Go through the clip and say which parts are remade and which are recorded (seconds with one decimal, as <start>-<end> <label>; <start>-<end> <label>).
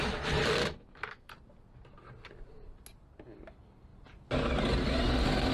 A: 0.0-0.6 recorded; 0.6-1.3 remade; 1.3-5.5 recorded